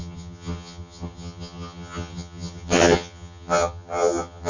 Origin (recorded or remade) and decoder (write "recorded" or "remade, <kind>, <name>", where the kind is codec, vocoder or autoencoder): remade, vocoder, HiFi-GAN